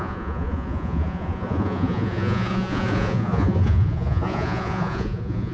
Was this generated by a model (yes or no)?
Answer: yes